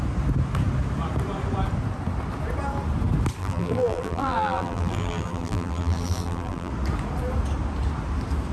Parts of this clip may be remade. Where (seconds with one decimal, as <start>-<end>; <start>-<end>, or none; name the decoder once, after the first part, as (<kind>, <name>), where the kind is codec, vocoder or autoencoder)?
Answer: 3.4-6.7 (vocoder, BigVGAN v2)